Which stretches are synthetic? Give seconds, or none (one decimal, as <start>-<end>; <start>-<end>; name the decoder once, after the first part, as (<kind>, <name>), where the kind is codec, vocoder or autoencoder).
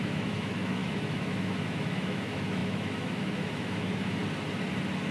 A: 0.0-4.2 (autoencoder, DAC-VAE)